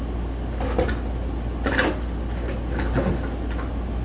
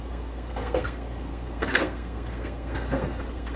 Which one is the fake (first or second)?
second